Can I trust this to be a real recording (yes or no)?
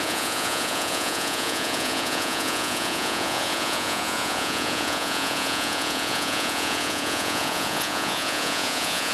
no